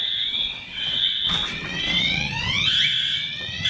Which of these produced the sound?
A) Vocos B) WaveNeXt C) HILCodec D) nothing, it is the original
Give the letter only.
B